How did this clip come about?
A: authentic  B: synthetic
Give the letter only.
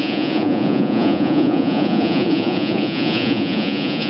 B